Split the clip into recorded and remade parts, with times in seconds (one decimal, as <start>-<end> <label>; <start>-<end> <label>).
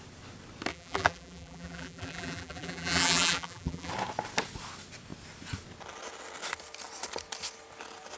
0.0-0.7 recorded; 0.7-3.9 remade; 3.9-8.2 recorded